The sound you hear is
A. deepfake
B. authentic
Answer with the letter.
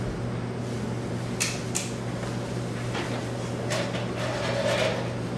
B